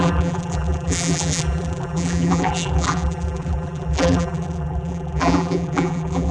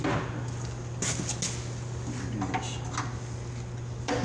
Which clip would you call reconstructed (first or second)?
first